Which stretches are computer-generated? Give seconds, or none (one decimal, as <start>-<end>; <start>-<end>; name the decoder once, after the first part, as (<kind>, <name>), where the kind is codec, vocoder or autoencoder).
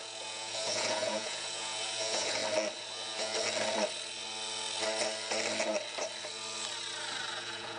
0.0-2.4 (vocoder, Vocos); 2.9-3.3; 7.3-7.8